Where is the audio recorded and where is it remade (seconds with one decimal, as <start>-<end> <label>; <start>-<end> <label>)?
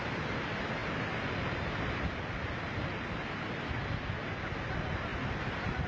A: 0.0-5.1 recorded; 5.1-5.9 remade